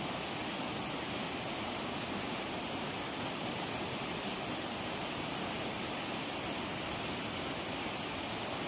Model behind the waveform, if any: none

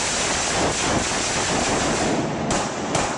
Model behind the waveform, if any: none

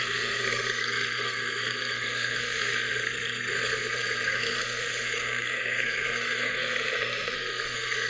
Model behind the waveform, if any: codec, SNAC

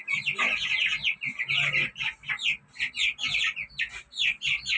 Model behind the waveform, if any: none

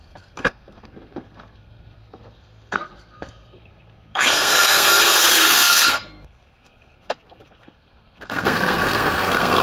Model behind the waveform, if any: codec, SNAC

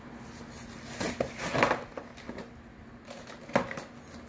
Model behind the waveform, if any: none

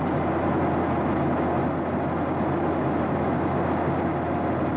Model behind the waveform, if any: none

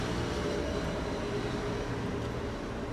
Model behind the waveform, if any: none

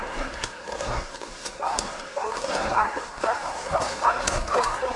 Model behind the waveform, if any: codec, SNAC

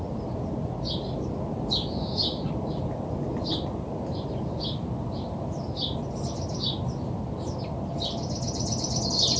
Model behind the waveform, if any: none